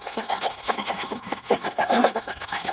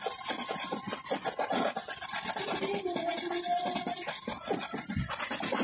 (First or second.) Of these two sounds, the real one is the second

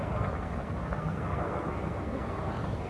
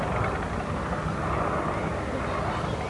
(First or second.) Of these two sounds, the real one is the second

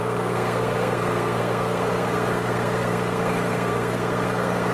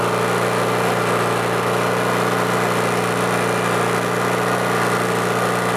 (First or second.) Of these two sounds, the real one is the second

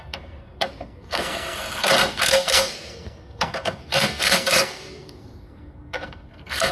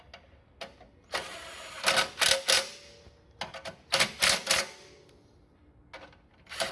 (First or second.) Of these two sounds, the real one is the second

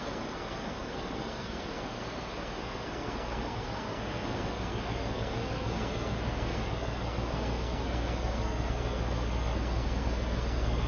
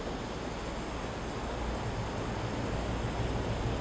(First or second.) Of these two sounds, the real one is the second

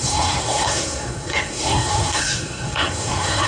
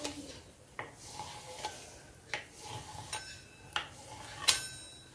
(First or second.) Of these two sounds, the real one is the second